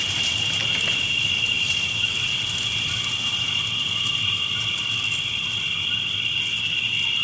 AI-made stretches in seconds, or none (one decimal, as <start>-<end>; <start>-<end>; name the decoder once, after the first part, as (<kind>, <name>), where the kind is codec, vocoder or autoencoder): none